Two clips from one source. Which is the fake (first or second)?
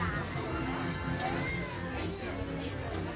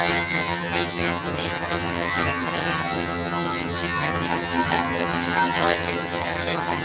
second